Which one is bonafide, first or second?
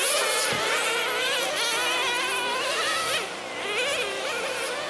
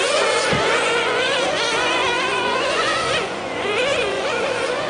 first